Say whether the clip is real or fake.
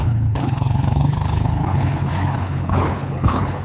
fake